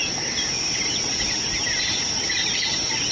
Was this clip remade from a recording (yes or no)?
no